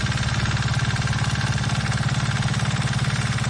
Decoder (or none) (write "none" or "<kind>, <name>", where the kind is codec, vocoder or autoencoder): none